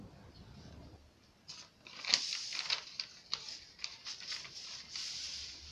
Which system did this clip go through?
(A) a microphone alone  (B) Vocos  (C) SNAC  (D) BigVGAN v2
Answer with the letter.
A